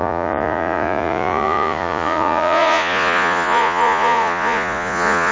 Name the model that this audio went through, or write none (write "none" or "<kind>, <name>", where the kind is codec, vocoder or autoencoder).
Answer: vocoder, Vocos